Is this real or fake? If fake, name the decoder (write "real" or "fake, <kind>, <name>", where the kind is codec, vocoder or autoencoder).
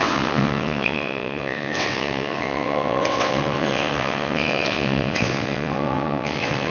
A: fake, vocoder, WaveNeXt